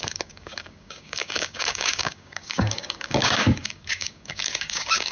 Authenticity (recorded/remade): remade